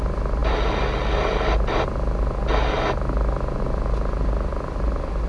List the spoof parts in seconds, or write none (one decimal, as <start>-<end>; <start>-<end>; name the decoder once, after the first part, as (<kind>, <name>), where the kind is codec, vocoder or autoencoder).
none